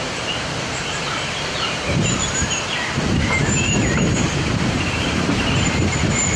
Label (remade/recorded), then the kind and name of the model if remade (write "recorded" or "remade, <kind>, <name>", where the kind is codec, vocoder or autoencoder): remade, vocoder, BigVGAN v2